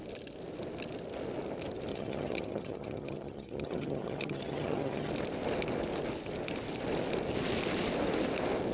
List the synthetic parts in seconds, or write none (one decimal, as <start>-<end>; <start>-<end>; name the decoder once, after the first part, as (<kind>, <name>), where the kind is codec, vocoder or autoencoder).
1.9-5.1 (vocoder, HiFi-GAN)